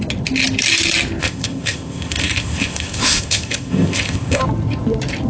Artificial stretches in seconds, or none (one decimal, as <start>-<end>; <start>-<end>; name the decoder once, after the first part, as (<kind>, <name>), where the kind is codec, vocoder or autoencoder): 1.2-4.4 (codec, ZipCodec)